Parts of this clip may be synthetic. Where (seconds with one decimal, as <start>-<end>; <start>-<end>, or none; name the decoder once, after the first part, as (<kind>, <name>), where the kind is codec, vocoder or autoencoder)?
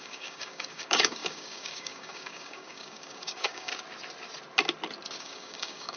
0.0-3.7 (codec, DAC); 5.2-6.0